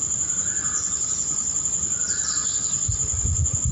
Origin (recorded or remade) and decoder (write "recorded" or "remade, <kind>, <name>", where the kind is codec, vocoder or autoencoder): recorded